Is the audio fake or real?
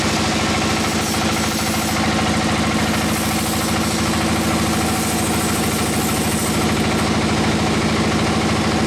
real